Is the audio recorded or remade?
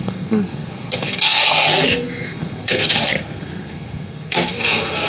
remade